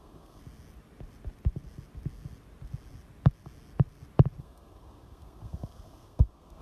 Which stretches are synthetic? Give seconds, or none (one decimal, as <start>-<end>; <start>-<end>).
0.0-0.4; 4.4-6.6